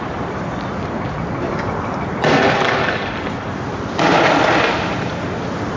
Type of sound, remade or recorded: recorded